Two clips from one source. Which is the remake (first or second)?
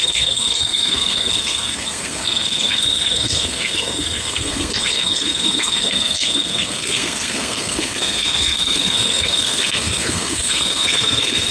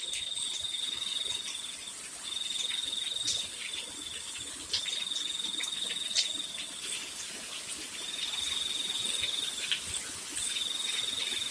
first